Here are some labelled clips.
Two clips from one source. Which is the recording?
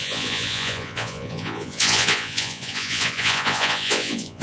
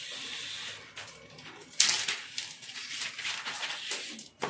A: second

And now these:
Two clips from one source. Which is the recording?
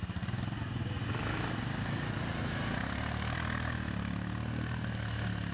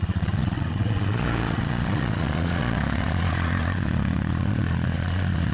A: first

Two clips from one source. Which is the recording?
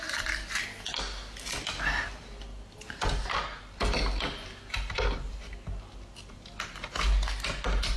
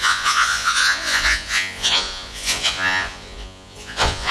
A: first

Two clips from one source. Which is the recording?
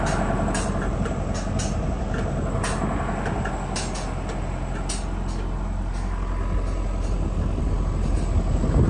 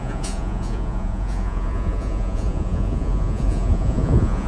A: first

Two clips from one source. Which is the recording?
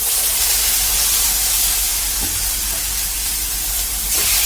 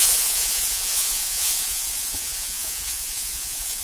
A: first